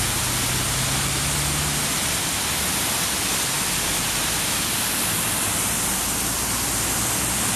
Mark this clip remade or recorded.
recorded